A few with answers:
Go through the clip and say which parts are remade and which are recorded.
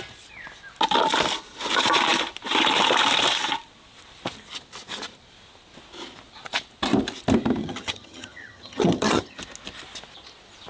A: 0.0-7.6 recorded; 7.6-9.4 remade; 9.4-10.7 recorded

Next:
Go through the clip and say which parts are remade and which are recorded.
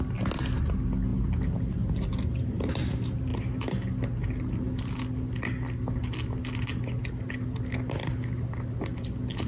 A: 0.0-9.5 recorded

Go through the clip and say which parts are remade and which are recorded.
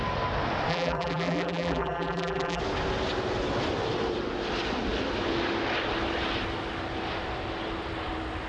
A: 0.0-0.7 recorded; 0.7-2.6 remade; 2.6-8.5 recorded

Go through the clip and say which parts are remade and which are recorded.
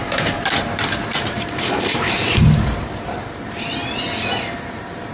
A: 0.0-3.1 remade; 3.1-5.1 recorded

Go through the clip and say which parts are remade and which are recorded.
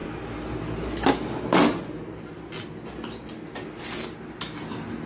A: 0.0-5.1 recorded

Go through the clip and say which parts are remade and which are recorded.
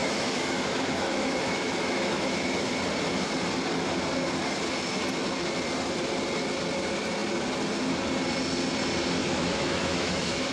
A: 0.0-2.7 remade; 2.7-9.2 recorded; 9.2-10.5 remade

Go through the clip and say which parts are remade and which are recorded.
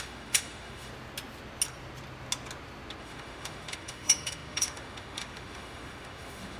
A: 0.0-0.9 remade; 0.9-3.0 recorded; 3.0-6.6 remade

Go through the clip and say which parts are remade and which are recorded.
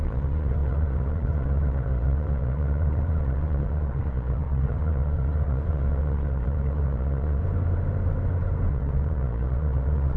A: 0.0-7.4 remade; 7.4-8.7 recorded; 8.7-10.2 remade